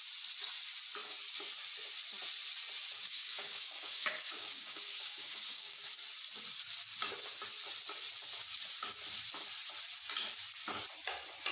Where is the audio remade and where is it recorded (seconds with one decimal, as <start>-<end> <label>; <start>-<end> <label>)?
0.0-3.1 recorded; 3.1-5.9 remade; 5.9-11.5 recorded